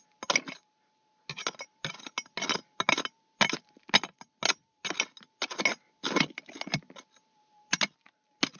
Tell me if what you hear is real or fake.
real